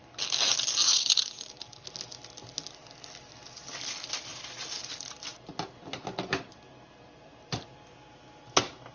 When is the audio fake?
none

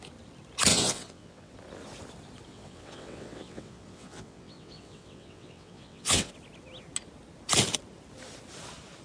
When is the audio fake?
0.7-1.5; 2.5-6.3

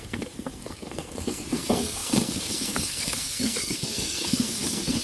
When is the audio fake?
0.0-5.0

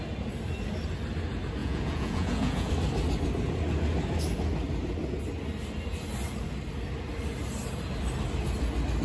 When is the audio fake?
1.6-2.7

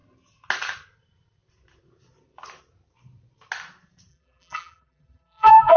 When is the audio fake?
4.1-5.8

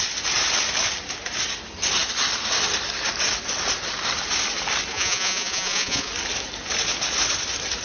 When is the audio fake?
4.9-6.1

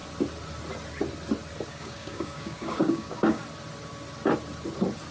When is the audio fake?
1.7-3.4

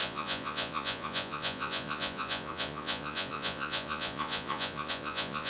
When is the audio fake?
0.0-5.5